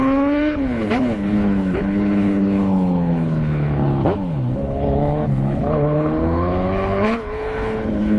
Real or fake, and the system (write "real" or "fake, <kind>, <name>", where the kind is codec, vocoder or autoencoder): fake, codec, HILCodec